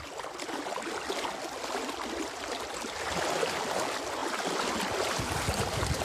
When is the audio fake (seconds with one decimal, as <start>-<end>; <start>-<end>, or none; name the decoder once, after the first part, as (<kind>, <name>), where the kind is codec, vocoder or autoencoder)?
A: none